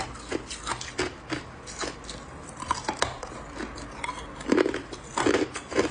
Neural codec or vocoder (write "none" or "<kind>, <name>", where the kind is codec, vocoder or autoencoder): none